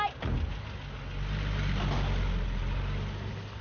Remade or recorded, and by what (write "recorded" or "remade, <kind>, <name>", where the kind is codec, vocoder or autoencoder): recorded